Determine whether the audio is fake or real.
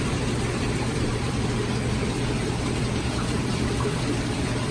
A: fake